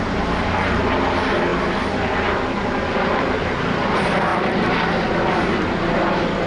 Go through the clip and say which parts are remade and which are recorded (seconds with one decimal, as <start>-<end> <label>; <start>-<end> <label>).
0.0-6.5 recorded